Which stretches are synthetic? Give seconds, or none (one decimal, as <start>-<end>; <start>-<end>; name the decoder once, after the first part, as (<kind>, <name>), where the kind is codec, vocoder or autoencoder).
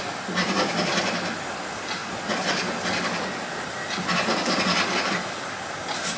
none